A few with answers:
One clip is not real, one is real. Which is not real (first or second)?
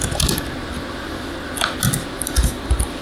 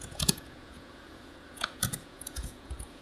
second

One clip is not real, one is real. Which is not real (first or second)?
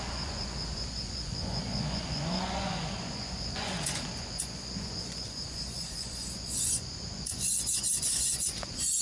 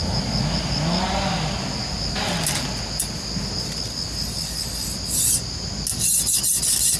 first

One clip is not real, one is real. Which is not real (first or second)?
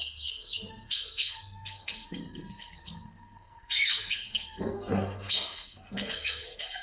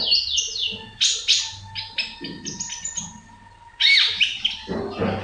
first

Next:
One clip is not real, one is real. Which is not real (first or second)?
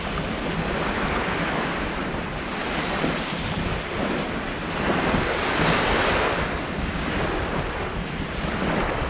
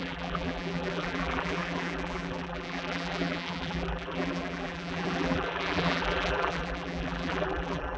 second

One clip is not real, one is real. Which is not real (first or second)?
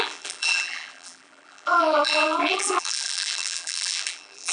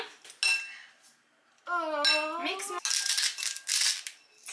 first